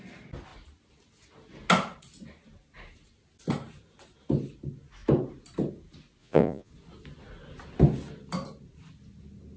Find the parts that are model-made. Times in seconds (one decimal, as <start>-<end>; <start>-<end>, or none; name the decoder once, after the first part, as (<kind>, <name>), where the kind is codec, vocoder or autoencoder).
6.2-6.7 (vocoder, Vocos)